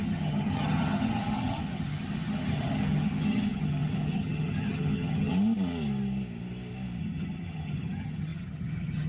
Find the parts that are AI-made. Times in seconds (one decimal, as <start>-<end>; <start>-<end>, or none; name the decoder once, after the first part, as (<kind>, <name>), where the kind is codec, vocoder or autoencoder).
0.0-5.3 (vocoder, HiFi-GAN); 7.0-9.1